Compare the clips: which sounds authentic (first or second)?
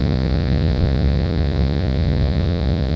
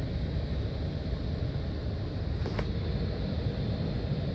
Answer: second